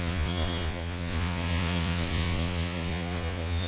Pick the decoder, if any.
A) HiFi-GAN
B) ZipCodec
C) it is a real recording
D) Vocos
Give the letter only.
D